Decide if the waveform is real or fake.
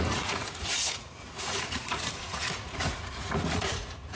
fake